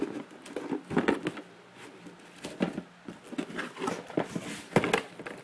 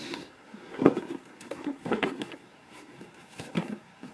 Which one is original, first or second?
first